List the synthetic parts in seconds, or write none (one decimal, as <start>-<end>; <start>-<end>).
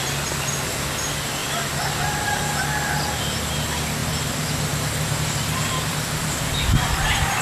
4.0-7.4